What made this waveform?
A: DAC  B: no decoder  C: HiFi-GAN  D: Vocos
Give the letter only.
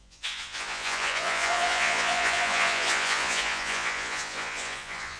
D